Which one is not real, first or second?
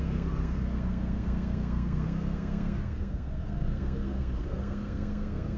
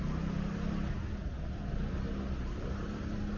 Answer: first